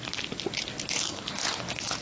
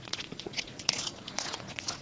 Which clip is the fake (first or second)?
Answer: second